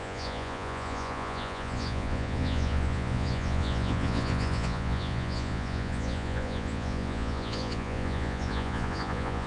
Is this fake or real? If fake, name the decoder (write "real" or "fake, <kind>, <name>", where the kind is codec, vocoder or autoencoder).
fake, vocoder, Vocos